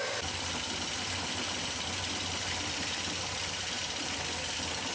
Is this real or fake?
real